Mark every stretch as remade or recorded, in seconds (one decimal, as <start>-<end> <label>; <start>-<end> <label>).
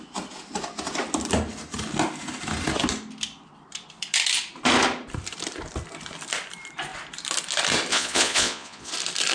0.0-7.9 recorded; 7.9-8.9 remade; 8.9-9.3 recorded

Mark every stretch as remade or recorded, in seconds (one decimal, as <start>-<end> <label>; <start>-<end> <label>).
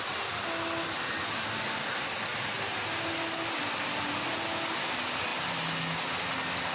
0.0-6.7 recorded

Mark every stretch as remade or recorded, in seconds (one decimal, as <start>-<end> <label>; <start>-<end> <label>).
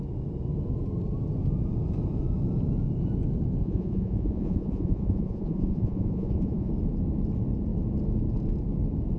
0.0-3.6 recorded; 3.6-6.7 remade; 6.7-9.2 recorded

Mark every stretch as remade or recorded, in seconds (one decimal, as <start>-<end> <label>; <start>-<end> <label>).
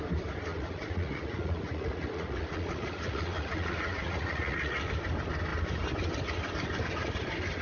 0.0-0.5 recorded; 0.5-4.9 remade; 4.9-7.6 recorded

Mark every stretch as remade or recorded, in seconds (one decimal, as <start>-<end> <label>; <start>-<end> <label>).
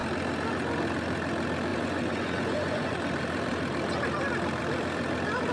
0.0-1.7 recorded; 1.7-2.9 remade; 2.9-5.5 recorded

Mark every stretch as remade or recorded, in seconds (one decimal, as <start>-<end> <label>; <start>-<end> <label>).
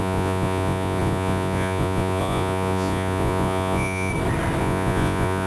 0.0-4.1 remade; 4.1-4.6 recorded; 4.6-5.5 remade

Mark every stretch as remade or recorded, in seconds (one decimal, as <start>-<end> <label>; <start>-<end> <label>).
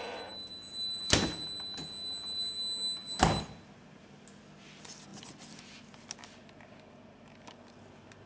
0.0-8.3 recorded